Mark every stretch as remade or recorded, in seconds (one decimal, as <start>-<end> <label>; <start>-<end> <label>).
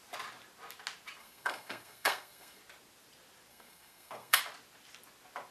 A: 0.0-1.2 recorded; 1.2-2.6 remade; 2.6-3.5 recorded; 3.5-4.4 remade; 4.4-5.5 recorded